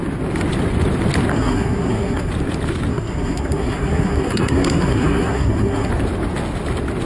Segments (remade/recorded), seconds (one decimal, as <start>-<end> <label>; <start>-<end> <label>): 0.0-1.3 recorded; 1.3-2.3 remade; 2.3-2.9 recorded; 2.9-5.9 remade; 5.9-7.1 recorded